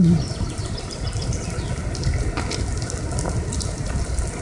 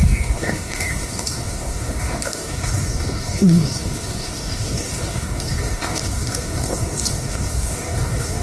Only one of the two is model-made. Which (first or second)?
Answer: second